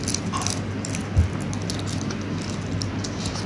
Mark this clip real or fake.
real